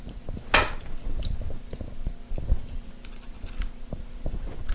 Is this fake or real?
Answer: real